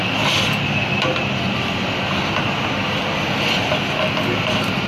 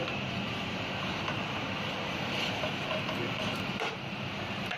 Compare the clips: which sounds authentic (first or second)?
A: first